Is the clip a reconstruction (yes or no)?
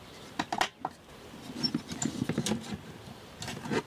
no